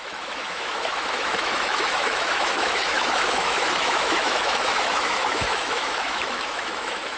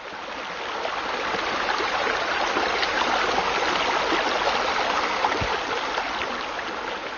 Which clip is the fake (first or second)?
first